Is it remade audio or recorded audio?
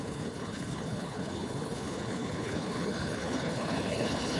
remade